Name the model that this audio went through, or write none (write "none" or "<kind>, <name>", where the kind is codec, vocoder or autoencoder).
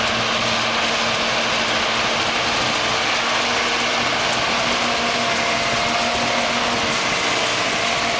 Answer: none